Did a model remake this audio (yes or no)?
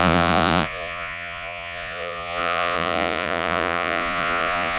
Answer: yes